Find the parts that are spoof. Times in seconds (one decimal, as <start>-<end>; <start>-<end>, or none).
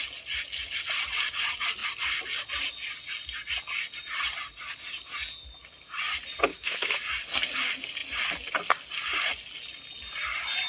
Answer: 6.5-7.0